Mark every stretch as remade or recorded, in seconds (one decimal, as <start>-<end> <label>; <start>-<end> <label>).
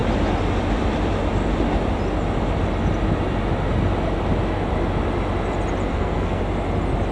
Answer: 0.0-5.9 recorded; 5.9-6.4 remade; 6.4-7.1 recorded